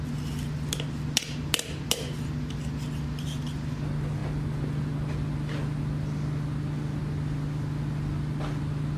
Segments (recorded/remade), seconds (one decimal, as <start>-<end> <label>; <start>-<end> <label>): 0.0-9.0 recorded